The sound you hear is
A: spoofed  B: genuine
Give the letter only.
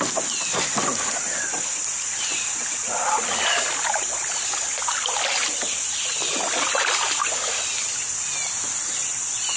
B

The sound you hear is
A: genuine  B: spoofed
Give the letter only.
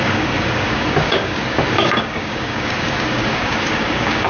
B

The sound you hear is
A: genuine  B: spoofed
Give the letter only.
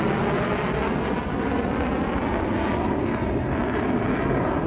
A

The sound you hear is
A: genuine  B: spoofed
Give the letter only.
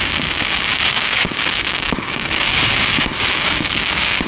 B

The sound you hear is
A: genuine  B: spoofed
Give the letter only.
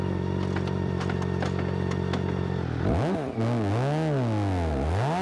A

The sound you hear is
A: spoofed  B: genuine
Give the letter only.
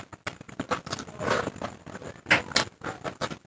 B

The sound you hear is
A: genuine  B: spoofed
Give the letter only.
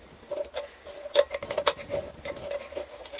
A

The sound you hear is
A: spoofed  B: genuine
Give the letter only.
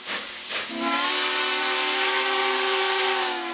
A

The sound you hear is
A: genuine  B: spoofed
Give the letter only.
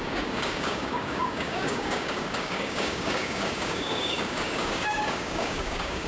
B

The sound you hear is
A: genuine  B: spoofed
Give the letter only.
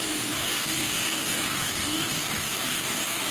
B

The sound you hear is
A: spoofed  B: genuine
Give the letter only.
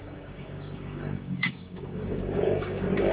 A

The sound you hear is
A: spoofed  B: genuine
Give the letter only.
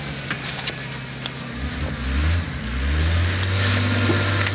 B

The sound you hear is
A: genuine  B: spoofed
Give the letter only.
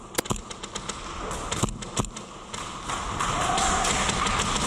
A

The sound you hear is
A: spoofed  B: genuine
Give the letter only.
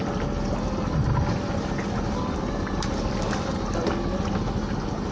B